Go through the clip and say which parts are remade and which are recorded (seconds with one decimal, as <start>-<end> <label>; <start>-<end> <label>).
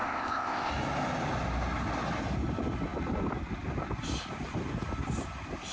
0.0-0.7 remade; 0.7-5.7 recorded